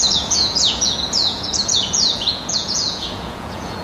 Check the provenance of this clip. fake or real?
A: fake